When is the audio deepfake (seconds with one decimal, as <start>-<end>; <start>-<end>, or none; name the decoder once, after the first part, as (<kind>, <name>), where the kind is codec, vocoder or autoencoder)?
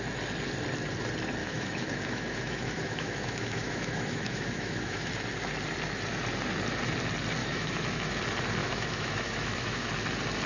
1.4-5.1 (autoencoder, DAC-VAE); 7.4-8.2; 8.6-9.9